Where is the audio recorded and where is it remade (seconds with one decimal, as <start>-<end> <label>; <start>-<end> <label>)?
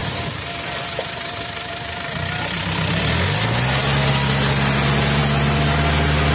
0.0-6.3 recorded